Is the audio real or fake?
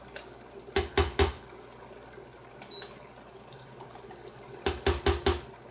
real